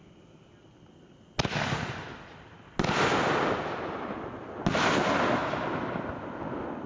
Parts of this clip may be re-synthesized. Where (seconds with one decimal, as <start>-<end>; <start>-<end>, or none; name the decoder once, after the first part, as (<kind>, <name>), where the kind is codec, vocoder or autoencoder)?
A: none